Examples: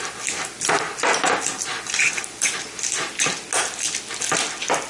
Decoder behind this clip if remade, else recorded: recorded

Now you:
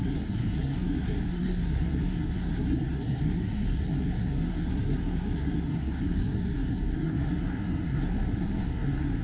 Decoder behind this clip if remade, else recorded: remade, codec, SNAC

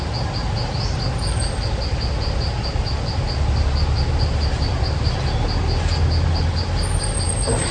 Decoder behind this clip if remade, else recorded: recorded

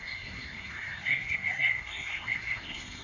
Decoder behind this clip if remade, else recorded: remade, codec, SNAC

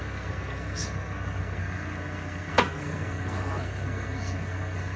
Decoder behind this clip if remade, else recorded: remade, codec, SNAC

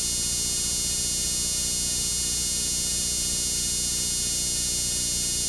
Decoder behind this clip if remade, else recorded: recorded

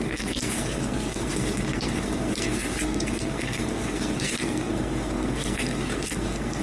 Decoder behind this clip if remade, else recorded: remade, codec, SNAC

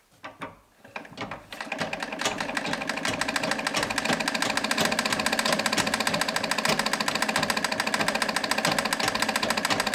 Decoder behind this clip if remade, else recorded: recorded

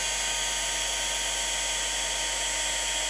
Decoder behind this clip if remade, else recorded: recorded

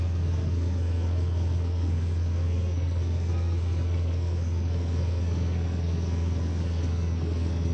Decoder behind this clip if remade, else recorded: remade, codec, SNAC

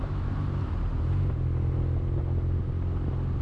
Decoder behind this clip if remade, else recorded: recorded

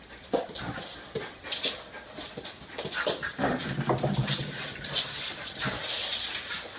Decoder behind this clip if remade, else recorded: recorded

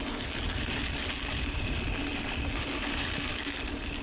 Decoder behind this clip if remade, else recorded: recorded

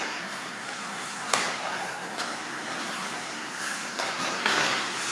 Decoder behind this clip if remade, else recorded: remade, codec, SNAC